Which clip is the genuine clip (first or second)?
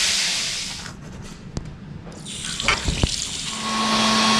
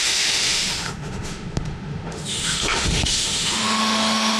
first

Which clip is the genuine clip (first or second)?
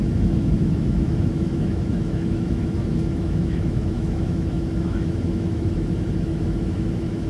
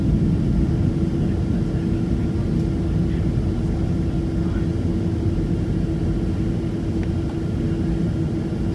second